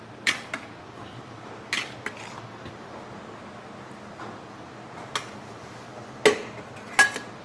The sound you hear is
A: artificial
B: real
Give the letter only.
B